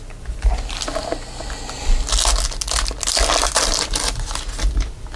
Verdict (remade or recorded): recorded